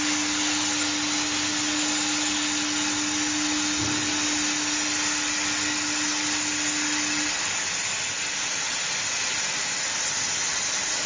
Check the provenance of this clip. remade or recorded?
recorded